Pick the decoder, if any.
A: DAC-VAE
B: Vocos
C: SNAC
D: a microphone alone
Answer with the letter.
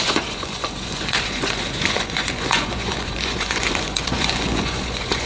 B